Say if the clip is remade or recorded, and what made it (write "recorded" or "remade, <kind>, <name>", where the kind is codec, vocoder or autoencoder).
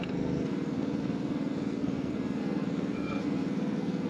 remade, codec, SNAC